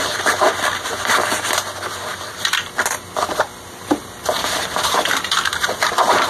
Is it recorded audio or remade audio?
remade